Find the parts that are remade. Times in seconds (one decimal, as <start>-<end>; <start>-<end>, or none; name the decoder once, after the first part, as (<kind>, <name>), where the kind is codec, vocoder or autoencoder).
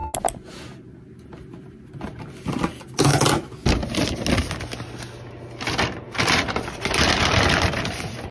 none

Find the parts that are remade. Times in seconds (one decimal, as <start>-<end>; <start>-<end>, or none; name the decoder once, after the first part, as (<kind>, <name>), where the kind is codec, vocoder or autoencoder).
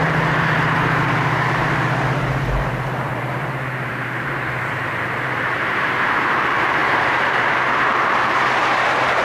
0.0-9.2 (vocoder, BigVGAN v2)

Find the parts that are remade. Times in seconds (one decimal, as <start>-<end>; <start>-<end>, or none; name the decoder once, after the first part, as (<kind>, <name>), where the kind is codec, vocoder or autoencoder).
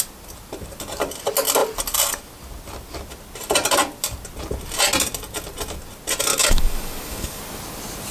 6.3-7.4 (codec, DAC)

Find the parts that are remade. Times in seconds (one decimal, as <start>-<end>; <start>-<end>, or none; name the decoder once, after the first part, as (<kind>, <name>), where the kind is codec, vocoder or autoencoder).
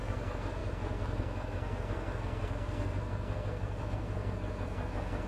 0.0-5.3 (codec, SNAC)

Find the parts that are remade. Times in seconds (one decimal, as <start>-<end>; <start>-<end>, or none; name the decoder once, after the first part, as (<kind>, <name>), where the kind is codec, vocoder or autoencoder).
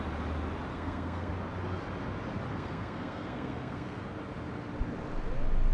0.7-1.3 (codec, SNAC); 2.5-4.0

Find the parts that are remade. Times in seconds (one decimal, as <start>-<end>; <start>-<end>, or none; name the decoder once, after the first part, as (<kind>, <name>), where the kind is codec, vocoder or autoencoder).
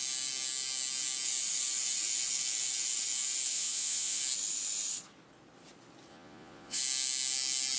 3.5-4.2 (vocoder, Vocos); 6.1-6.8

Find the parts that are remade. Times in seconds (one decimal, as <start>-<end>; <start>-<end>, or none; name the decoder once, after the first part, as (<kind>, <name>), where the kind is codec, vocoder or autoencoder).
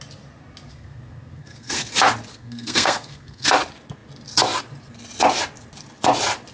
0.7-1.9 (codec, SNAC); 2.3-3.5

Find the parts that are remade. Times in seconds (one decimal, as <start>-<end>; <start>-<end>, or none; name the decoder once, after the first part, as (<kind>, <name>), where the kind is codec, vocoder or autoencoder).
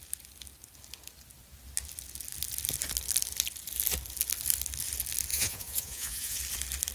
5.3-6.4 (vocoder, Vocos)